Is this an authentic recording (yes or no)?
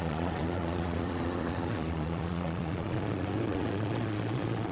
no